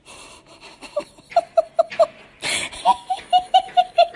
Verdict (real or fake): real